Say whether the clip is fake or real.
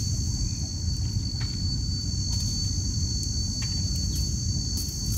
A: real